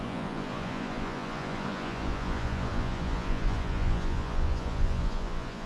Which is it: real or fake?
fake